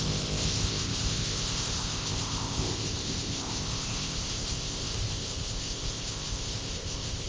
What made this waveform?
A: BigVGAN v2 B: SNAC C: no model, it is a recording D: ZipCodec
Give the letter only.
D